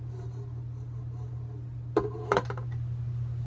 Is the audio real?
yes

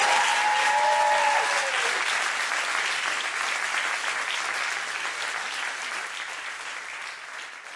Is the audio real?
yes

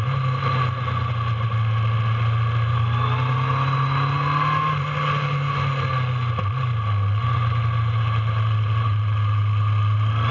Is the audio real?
yes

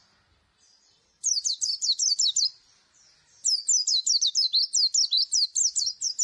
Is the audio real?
yes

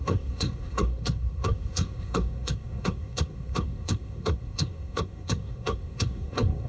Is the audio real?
no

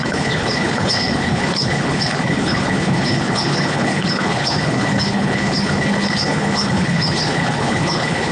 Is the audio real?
no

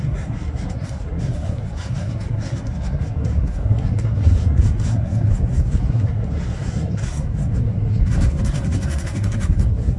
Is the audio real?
no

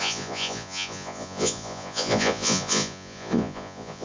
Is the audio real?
no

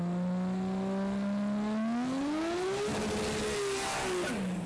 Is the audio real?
yes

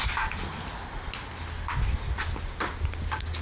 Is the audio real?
yes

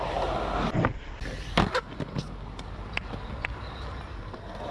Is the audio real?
yes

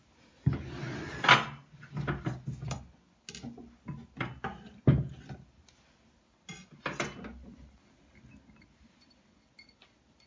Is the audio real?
yes